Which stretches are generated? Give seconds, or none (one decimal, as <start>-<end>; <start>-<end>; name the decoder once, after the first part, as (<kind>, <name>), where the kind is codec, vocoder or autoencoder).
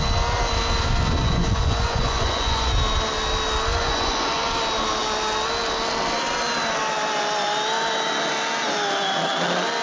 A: 1.2-2.7 (vocoder, Vocos); 3.7-4.5